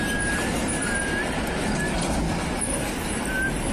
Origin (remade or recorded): recorded